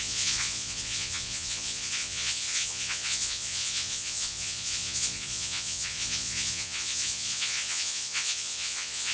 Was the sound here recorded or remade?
remade